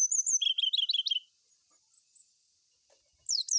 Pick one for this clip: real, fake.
real